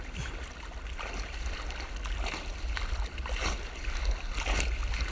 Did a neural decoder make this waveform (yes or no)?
no